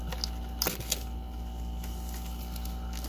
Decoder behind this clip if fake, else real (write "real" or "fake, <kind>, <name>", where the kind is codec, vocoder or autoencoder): real